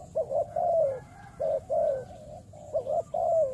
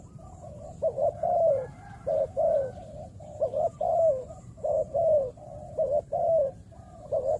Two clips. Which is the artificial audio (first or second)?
second